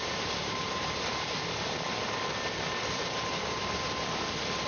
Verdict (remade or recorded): recorded